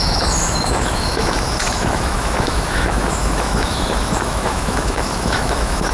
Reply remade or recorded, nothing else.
remade